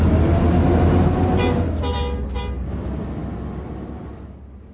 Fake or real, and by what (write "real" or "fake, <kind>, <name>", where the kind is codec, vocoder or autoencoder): real